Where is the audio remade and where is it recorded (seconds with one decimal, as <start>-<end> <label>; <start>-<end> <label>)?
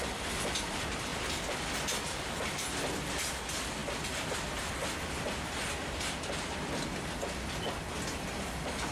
0.0-8.9 recorded